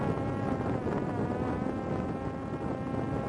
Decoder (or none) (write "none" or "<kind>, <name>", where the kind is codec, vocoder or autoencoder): none